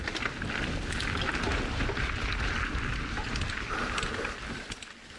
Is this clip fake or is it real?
real